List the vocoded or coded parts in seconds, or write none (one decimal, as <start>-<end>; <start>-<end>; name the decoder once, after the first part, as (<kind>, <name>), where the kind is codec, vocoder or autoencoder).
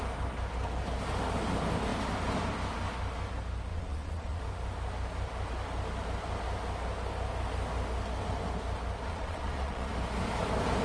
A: 3.7-4.4 (vocoder, Vocos); 9.1-9.9